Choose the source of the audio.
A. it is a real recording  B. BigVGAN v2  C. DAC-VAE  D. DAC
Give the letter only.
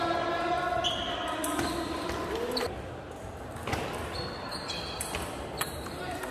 A